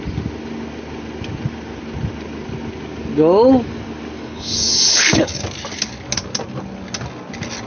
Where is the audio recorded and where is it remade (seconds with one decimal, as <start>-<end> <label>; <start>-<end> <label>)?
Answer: 0.0-4.2 recorded; 4.2-5.4 remade; 5.4-7.7 recorded